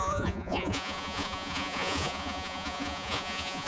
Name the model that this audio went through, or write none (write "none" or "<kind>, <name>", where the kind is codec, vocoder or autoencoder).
vocoder, Vocos